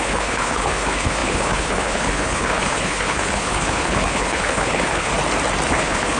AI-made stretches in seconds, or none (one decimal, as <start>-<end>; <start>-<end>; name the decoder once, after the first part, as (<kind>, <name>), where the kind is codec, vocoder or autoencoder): 0.0-5.1 (codec, HILCodec); 5.7-6.2